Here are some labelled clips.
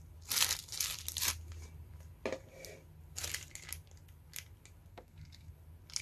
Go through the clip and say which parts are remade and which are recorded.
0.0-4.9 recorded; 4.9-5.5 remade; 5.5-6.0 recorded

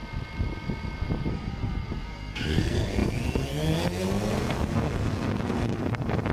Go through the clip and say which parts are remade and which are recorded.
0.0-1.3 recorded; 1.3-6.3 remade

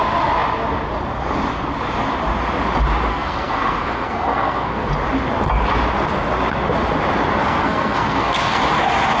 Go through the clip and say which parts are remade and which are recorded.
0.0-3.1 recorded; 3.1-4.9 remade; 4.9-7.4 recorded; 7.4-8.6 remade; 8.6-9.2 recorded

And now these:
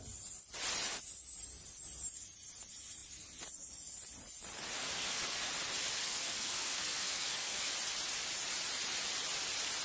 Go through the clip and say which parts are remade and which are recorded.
0.0-4.8 recorded; 4.8-5.5 remade; 5.5-6.0 recorded; 6.0-7.7 remade; 7.7-9.8 recorded

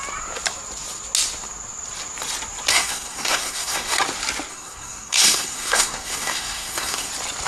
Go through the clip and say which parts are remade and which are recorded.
0.0-2.7 recorded; 2.7-4.0 remade; 4.0-4.5 recorded; 4.5-7.1 remade; 7.1-7.5 recorded

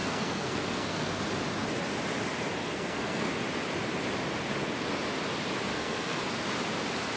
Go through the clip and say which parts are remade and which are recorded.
0.0-1.2 remade; 1.2-2.6 recorded; 2.6-3.3 remade; 3.3-5.7 recorded; 5.7-6.2 remade; 6.2-7.2 recorded